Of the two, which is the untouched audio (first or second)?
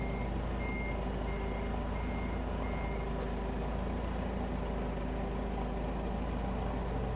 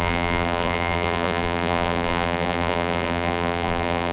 first